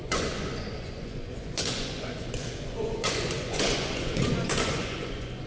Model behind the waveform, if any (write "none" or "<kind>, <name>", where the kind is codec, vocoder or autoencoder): vocoder, Vocos